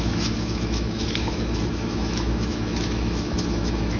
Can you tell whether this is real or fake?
fake